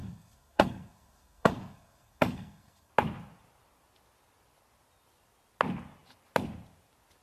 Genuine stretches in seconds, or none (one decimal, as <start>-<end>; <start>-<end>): 2.9-7.2